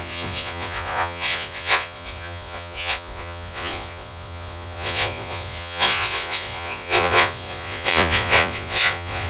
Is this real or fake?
fake